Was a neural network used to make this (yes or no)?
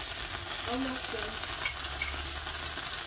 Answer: no